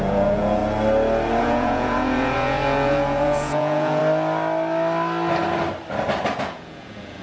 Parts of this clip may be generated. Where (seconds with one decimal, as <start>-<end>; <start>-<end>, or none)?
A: 0.0-0.6; 1.4-4.0; 6.4-7.2